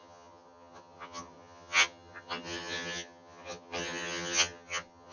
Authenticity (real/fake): fake